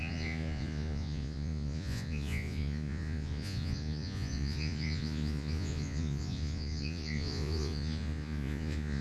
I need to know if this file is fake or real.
fake